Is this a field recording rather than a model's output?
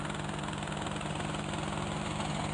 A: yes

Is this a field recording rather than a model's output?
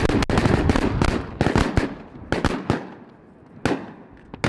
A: yes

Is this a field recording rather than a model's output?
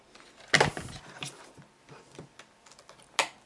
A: yes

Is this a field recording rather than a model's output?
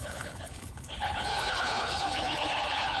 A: no